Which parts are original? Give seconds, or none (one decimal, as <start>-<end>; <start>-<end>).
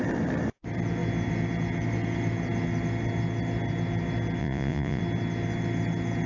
0.0-4.4; 5.0-6.3